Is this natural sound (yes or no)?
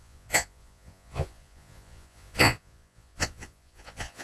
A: no